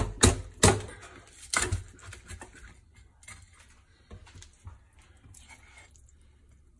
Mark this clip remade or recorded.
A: recorded